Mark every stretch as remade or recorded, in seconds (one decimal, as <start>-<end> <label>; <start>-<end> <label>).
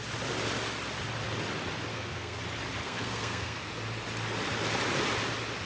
0.0-1.9 recorded; 1.9-2.4 remade; 2.4-2.8 recorded; 2.8-3.7 remade; 3.7-5.7 recorded